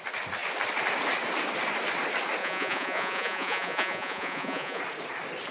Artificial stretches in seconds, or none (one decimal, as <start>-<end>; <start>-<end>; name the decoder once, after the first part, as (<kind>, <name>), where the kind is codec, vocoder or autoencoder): 2.4-4.8 (vocoder, Vocos)